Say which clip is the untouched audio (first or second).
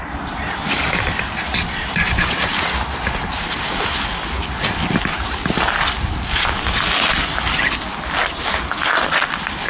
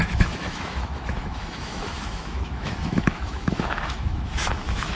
first